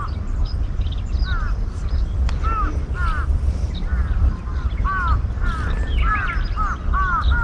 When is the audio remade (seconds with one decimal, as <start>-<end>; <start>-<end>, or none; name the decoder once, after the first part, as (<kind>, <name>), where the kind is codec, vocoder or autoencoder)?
none

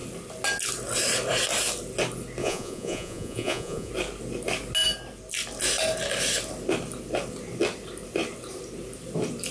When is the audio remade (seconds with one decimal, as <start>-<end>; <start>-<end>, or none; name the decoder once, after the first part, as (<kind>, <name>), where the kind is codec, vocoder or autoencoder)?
2.4-3.9 (vocoder, Vocos)